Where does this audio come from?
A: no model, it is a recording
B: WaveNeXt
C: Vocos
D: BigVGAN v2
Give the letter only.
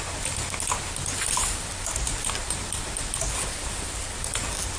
A